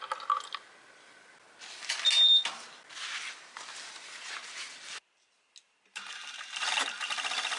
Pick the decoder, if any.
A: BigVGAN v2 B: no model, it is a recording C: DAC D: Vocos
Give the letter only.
B